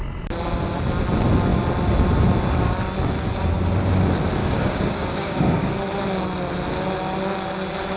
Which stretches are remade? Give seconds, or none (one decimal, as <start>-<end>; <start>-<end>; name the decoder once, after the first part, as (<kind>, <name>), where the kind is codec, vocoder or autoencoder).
4.4-5.7 (codec, DAC)